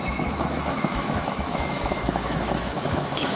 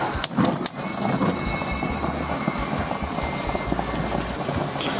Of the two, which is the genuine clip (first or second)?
second